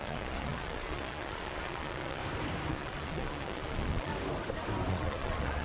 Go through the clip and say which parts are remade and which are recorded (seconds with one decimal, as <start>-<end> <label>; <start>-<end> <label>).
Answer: 0.0-2.2 remade; 2.2-2.7 recorded; 2.7-4.1 remade; 4.1-4.9 recorded; 4.9-5.6 remade